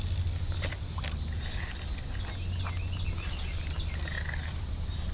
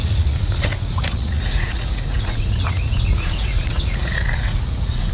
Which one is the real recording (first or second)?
first